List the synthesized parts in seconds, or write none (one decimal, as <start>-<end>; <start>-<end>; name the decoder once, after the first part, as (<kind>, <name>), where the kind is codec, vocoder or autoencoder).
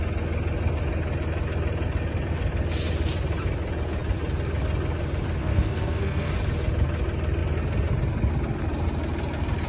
5.4-6.3 (codec, SNAC)